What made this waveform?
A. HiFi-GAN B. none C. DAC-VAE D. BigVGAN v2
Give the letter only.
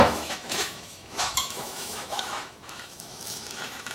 C